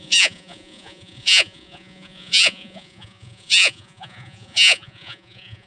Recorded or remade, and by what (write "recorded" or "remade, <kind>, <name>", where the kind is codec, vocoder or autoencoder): remade, vocoder, Vocos